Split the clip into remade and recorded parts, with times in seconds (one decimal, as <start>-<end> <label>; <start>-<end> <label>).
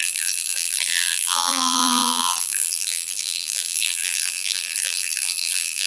0.0-5.9 remade